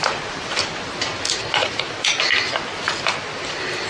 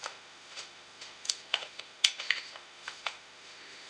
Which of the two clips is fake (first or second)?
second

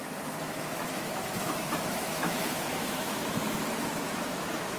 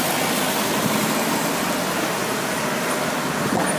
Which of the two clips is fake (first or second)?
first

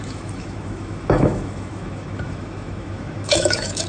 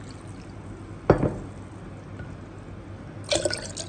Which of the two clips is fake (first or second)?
first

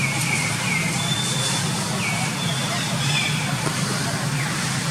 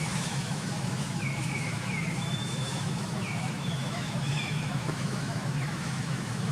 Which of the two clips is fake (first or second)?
second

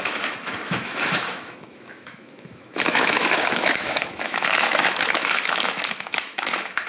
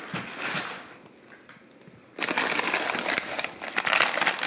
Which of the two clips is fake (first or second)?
first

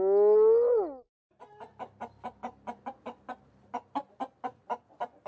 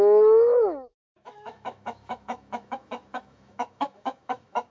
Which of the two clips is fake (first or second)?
second